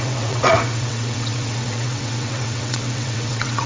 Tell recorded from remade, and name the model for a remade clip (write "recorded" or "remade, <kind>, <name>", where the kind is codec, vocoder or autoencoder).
remade, vocoder, WaveNeXt